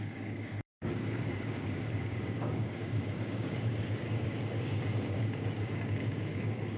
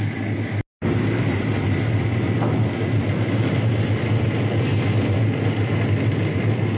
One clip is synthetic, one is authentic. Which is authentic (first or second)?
second